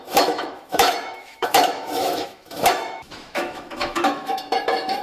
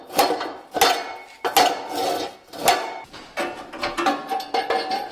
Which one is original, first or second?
second